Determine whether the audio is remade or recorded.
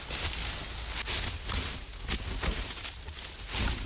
recorded